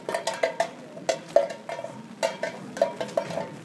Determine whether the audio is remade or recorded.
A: recorded